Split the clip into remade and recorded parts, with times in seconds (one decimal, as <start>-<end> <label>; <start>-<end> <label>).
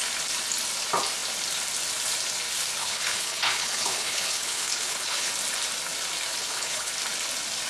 0.0-2.8 recorded; 2.8-5.3 remade; 5.3-6.4 recorded; 6.4-6.9 remade; 6.9-7.7 recorded